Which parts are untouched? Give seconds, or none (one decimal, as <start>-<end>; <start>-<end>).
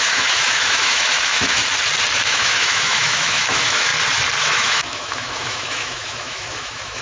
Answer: 1.6-2.2; 3.9-4.4